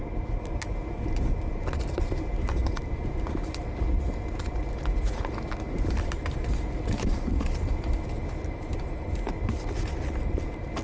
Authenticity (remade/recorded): recorded